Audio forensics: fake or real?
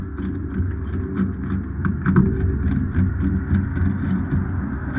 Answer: real